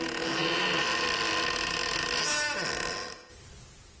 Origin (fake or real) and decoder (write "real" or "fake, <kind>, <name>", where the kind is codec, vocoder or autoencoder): real